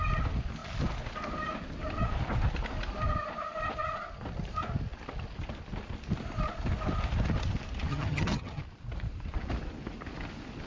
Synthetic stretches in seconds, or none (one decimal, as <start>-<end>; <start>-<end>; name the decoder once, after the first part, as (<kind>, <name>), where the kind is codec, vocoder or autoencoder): 7.9-8.6 (vocoder, HiFi-GAN)